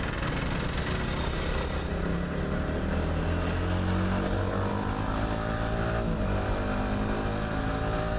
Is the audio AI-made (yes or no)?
no